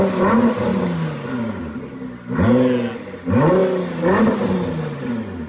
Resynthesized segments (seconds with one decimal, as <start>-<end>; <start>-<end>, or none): none